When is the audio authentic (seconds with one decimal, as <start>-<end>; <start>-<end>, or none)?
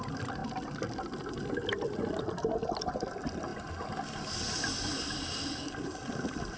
0.0-6.6